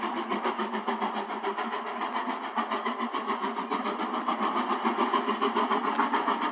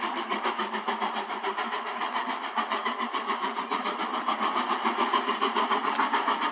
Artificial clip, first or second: second